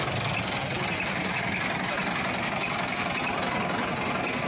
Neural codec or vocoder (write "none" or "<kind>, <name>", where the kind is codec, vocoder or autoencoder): none